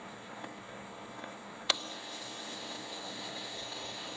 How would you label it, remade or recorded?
remade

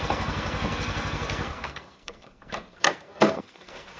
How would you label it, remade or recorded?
remade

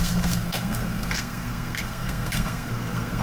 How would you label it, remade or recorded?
remade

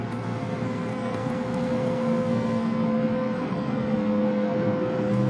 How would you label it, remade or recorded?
remade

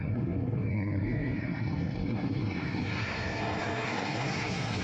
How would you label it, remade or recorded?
remade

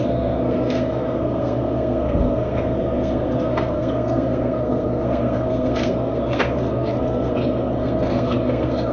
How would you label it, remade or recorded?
remade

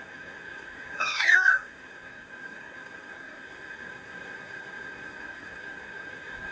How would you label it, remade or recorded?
remade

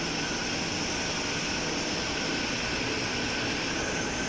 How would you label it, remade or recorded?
recorded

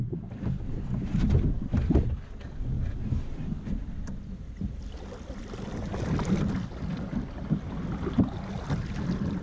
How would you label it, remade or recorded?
recorded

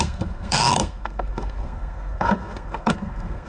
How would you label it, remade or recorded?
remade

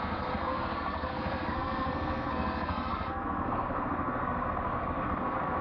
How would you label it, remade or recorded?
remade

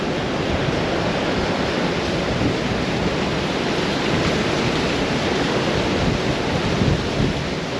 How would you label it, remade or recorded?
recorded